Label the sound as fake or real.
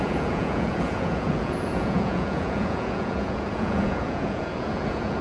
fake